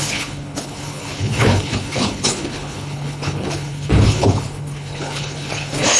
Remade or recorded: remade